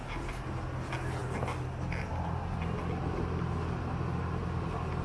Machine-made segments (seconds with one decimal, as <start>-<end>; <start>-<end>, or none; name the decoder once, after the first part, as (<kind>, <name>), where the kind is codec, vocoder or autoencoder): none